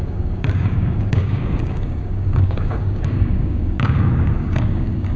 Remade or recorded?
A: remade